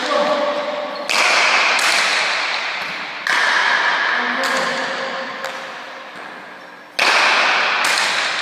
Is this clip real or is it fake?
real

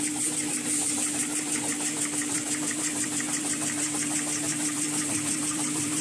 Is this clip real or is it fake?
fake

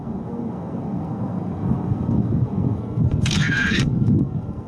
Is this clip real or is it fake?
fake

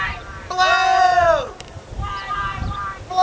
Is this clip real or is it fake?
fake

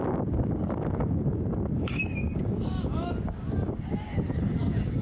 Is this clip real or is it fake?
fake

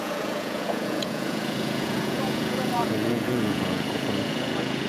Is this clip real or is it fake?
fake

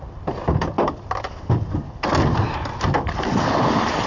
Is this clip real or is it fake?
fake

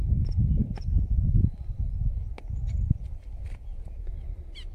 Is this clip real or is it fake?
real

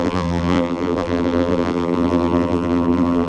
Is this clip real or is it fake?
fake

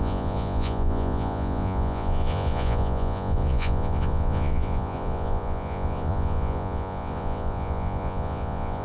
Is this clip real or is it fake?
fake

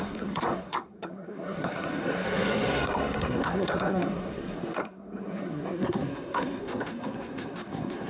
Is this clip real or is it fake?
fake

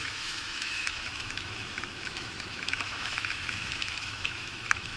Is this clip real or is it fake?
fake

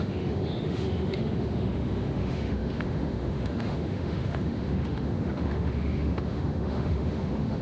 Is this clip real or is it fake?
fake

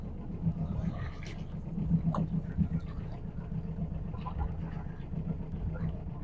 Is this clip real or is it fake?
real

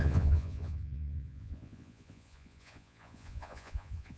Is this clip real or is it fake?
fake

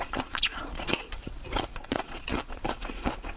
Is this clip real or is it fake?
fake